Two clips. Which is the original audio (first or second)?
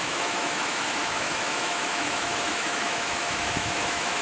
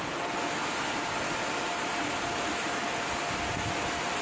second